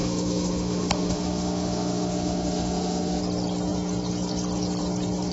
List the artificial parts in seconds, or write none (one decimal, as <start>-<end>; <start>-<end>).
0.0-3.2